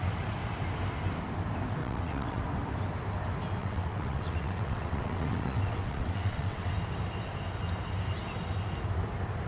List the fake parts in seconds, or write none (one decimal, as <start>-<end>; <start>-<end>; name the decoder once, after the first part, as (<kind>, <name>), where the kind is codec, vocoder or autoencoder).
1.8-2.4 (vocoder, WaveNeXt); 3.6-6.7